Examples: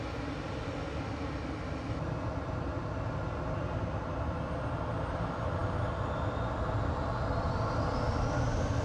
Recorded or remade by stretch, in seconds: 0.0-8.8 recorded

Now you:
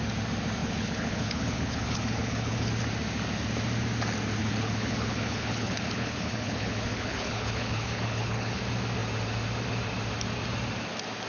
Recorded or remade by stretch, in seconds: 0.0-0.6 recorded; 0.6-2.7 remade; 2.7-4.4 recorded; 4.4-8.6 remade; 8.6-11.3 recorded

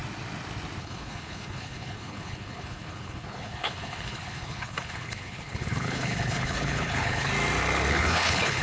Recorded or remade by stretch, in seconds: 0.0-0.8 recorded; 0.8-7.3 remade; 7.3-7.9 recorded; 7.9-8.6 remade

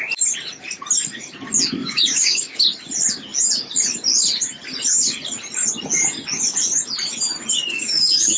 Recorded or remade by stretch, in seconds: 0.0-1.8 recorded; 1.8-2.6 remade; 2.6-7.7 recorded; 7.7-8.4 remade